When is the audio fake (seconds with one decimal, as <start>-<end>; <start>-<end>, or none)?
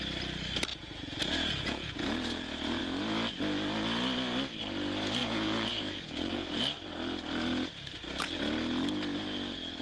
0.7-2.8; 5.2-6.6